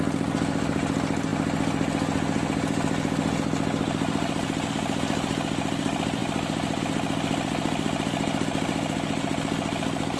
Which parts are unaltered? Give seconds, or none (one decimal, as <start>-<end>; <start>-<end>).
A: 0.0-10.2